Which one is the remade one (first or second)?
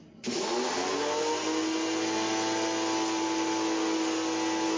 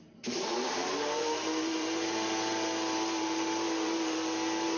second